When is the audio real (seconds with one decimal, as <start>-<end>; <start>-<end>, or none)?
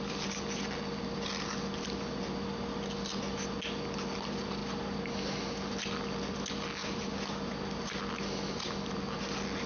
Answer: 0.0-9.7